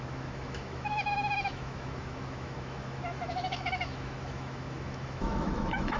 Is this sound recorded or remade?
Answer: remade